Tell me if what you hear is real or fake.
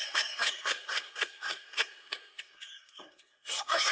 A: fake